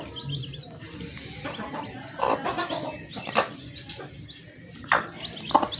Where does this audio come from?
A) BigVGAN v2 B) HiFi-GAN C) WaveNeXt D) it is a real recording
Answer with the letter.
D